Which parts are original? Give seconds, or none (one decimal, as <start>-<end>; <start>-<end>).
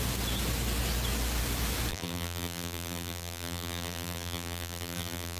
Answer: 0.0-1.9